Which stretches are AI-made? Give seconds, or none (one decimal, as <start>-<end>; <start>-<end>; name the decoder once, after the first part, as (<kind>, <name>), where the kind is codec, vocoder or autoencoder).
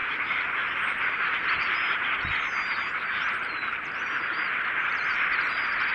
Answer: 0.0-1.7 (vocoder, BigVGAN v2); 3.1-5.9